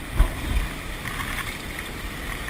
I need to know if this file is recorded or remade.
recorded